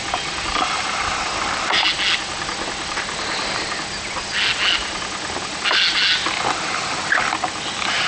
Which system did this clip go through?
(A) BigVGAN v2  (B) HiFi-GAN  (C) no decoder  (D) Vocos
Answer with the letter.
C